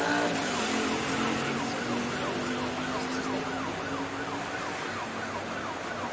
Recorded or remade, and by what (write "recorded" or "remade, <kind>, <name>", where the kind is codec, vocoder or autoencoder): recorded